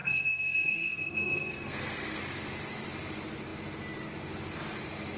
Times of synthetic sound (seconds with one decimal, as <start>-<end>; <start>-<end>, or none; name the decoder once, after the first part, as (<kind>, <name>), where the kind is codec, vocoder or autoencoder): 0.0-2.2 (codec, SNAC)